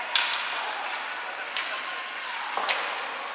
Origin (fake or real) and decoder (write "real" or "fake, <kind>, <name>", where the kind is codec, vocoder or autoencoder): real